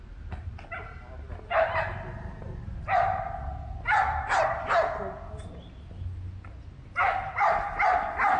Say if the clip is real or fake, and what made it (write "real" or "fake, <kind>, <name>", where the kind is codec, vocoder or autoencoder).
real